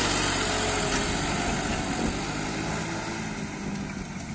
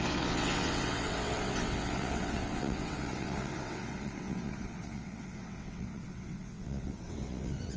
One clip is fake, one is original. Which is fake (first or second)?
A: second